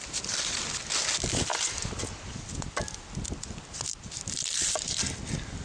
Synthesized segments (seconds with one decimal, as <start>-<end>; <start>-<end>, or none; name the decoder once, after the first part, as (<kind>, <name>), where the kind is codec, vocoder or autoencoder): none